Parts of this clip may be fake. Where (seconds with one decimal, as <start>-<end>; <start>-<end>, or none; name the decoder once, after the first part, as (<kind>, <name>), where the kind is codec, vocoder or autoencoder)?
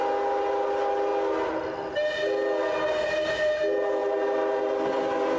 none